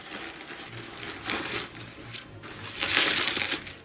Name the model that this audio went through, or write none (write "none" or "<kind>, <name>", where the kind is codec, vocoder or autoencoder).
none